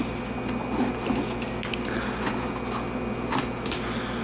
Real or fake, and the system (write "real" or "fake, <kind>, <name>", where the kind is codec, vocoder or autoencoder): real